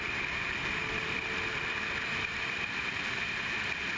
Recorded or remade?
remade